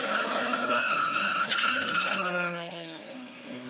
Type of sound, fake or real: fake